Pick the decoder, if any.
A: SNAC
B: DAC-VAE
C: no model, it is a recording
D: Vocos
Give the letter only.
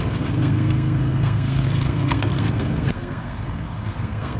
A